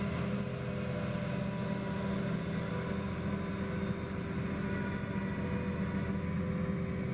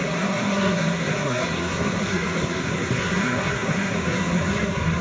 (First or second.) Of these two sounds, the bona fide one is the first